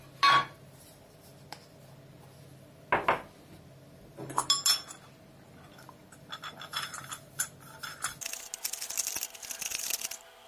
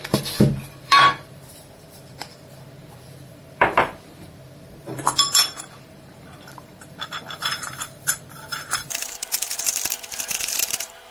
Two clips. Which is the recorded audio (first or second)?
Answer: first